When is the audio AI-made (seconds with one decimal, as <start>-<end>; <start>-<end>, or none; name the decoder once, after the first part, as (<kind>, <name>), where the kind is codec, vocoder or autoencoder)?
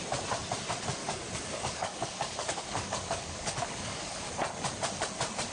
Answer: 1.0-4.3 (codec, DAC)